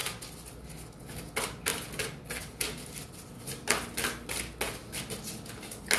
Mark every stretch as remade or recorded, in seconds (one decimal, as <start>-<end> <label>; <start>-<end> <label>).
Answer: 0.0-6.0 recorded